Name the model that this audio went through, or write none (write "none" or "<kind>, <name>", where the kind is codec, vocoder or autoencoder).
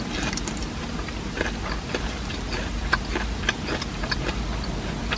none